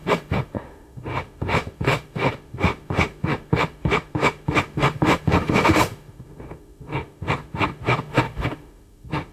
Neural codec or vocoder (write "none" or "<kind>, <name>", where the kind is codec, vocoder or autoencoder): autoencoder, DAC-VAE